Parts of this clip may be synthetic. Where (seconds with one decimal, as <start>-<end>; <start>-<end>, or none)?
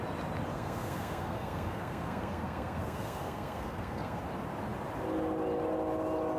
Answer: 0.5-4.2